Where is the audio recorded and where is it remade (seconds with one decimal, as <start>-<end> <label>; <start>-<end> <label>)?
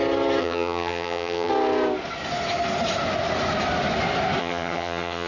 0.0-0.4 recorded; 0.4-1.5 remade; 1.5-4.4 recorded; 4.4-5.3 remade